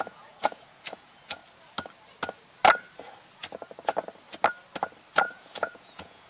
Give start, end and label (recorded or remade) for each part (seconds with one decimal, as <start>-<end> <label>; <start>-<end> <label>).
0.0-1.4 remade; 1.4-5.2 recorded; 5.2-6.3 remade